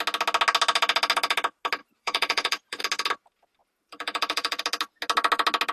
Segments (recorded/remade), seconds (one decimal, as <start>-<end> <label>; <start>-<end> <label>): 0.0-1.8 recorded; 1.8-2.8 remade; 2.8-3.6 recorded; 3.6-4.6 remade; 4.6-5.7 recorded